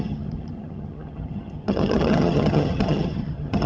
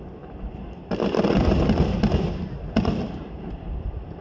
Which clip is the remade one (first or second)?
first